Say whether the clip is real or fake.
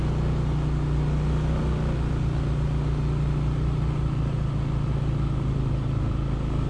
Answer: real